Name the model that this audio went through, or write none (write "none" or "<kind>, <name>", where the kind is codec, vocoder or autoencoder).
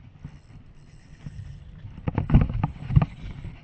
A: none